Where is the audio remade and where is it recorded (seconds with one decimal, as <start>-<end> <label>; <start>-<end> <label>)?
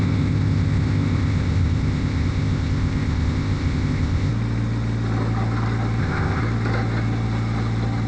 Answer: 0.0-4.3 remade; 4.3-6.0 recorded; 6.0-6.4 remade; 6.4-8.1 recorded